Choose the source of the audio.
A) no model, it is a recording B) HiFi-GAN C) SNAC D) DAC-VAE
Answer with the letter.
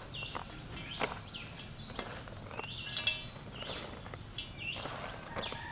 A